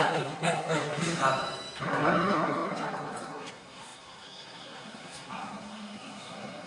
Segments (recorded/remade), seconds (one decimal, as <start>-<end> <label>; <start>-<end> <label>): 0.0-1.2 remade; 1.2-1.8 recorded; 1.8-6.7 remade